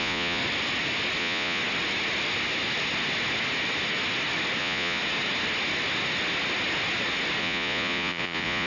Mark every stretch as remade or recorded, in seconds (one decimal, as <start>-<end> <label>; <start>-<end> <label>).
0.0-0.4 remade; 0.4-1.2 recorded; 1.2-1.6 remade; 1.6-4.6 recorded; 4.6-5.0 remade; 5.0-7.4 recorded; 7.4-8.7 remade